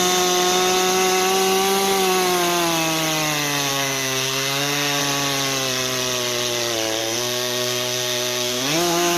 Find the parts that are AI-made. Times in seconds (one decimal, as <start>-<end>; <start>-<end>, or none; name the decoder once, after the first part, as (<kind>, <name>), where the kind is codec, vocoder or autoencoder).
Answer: 3.7-5.0 (codec, SNAC); 7.0-9.2